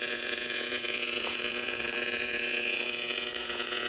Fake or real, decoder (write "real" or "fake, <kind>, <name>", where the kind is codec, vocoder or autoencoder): fake, vocoder, Vocos